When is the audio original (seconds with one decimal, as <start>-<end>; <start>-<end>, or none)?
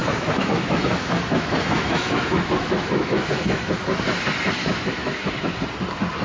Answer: 3.7-4.6; 5.3-6.2